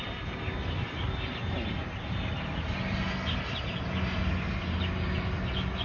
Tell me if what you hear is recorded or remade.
recorded